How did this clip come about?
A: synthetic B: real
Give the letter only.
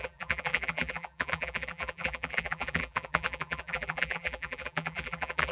A